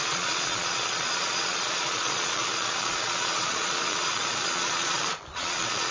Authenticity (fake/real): fake